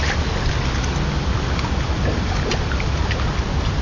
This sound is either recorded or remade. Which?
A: recorded